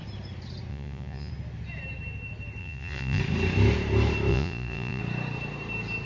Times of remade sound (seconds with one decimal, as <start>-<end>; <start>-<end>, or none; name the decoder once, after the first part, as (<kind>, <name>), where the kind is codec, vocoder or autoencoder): 0.7-1.3 (vocoder, Vocos); 2.6-3.2; 4.3-5.0